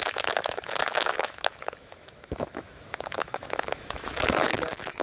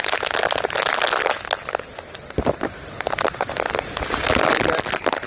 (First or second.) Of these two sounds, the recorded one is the second